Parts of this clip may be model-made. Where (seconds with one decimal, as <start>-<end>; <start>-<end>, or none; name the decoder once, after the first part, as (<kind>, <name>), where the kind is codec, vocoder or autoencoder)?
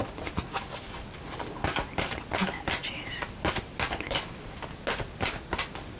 none